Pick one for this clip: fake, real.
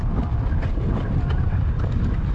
real